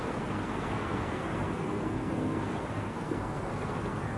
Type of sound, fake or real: fake